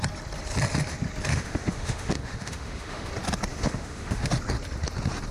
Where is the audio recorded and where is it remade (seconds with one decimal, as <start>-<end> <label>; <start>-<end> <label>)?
0.0-1.3 recorded; 1.3-3.1 remade; 3.1-3.5 recorded; 3.5-4.3 remade; 4.3-5.3 recorded